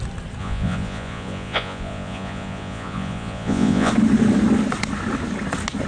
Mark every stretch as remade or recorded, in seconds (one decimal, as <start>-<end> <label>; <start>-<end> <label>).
0.0-0.4 recorded; 0.4-3.9 remade; 3.9-5.9 recorded